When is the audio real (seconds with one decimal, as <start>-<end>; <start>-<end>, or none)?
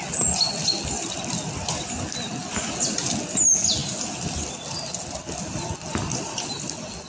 0.0-7.1